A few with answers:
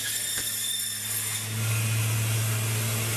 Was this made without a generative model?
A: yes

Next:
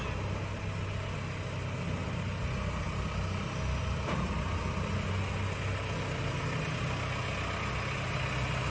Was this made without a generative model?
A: yes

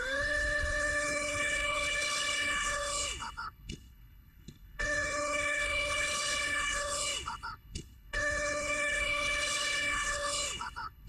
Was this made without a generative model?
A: no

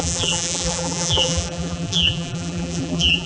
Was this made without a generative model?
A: no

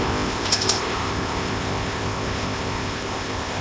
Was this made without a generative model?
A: no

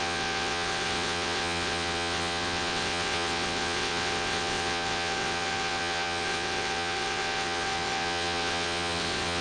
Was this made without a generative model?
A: no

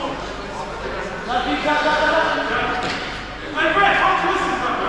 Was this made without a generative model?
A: yes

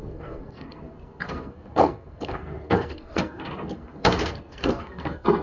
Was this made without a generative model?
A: no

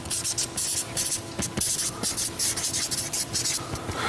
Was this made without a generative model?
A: yes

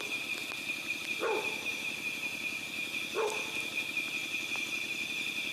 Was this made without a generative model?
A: yes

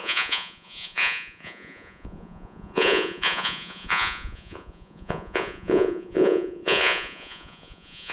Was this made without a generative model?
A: no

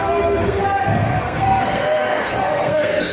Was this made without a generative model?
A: no